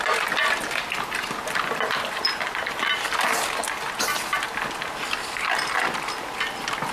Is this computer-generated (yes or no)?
no